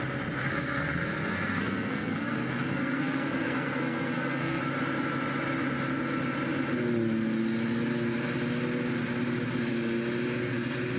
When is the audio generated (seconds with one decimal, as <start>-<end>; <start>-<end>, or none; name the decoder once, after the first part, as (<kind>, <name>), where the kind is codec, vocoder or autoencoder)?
0.4-4.6 (codec, SNAC)